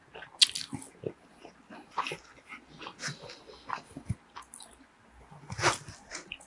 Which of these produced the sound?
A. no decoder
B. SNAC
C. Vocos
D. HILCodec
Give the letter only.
A